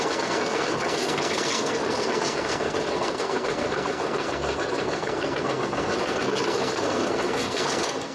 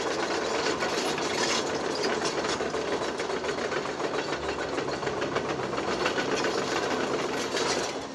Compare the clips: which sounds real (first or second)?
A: second